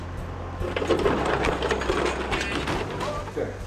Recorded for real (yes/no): yes